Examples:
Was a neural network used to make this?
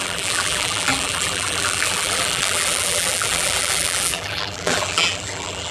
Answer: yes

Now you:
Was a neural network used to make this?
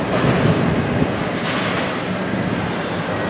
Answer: no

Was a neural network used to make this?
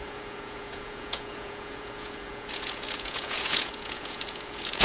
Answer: yes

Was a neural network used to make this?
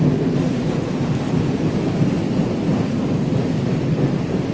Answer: no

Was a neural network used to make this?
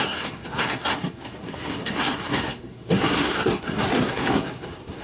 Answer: yes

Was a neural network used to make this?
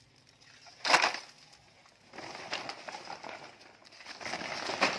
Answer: no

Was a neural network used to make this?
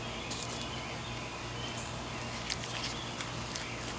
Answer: no